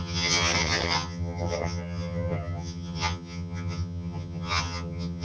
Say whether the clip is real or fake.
fake